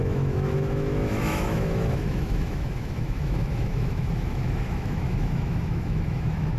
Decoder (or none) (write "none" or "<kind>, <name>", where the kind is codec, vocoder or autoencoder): autoencoder, DAC-VAE